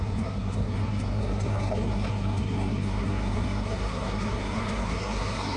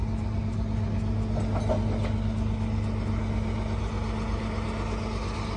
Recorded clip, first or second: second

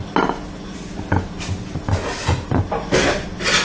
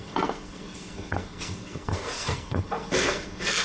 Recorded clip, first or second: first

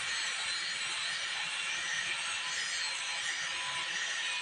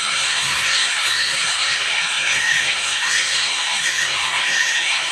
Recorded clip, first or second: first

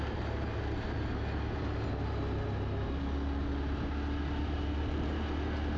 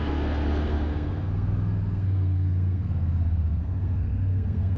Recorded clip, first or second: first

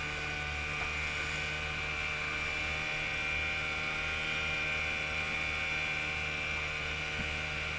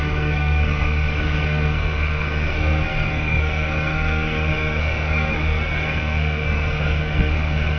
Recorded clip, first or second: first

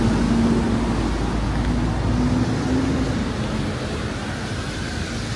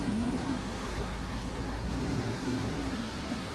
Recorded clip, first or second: first